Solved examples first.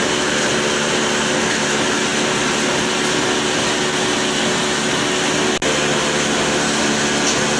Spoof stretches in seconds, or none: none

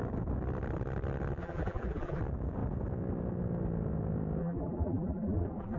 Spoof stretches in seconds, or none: 1.4-2.2 (vocoder, BigVGAN v2); 4.4-5.8

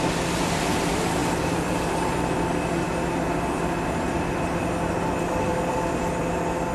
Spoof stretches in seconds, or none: 5.5-6.1 (vocoder, BigVGAN v2)

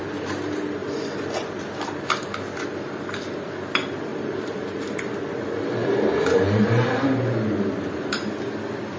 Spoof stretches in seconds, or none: 4.1-5.1 (vocoder, BigVGAN v2); 5.8-7.7

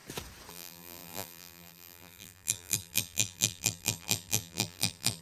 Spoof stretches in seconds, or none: 0.5-5.2 (vocoder, BigVGAN v2)

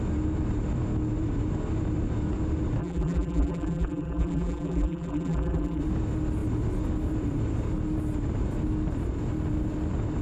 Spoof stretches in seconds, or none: 2.8-5.8 (vocoder, BigVGAN v2)

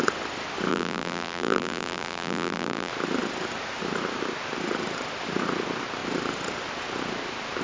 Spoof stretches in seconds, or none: 0.7-2.9 (vocoder, BigVGAN v2)

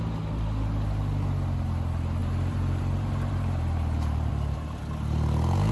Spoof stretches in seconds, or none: 2.2-4.3 (vocoder, BigVGAN v2)